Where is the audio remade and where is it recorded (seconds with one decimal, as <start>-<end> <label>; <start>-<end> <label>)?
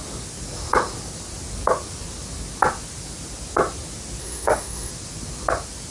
0.0-4.2 recorded; 4.2-4.9 remade; 4.9-5.9 recorded